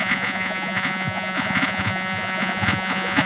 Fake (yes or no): yes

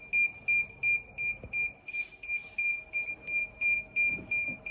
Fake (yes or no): no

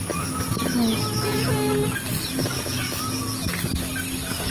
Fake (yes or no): no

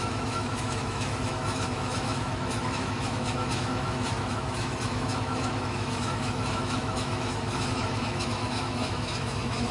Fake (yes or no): yes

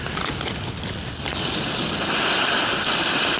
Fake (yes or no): yes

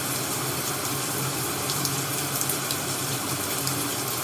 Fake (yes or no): no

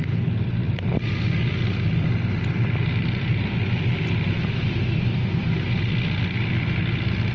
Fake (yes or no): no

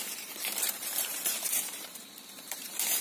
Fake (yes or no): yes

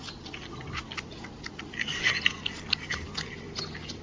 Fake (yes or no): no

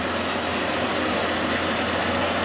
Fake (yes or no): no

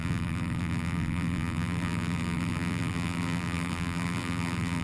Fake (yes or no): yes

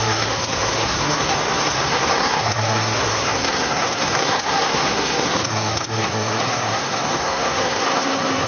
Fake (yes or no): yes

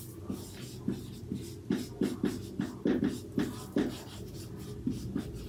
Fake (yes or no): no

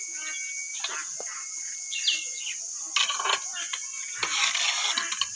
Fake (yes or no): no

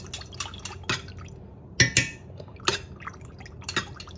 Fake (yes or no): no